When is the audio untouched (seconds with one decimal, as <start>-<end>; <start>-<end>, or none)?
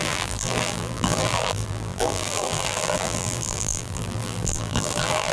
none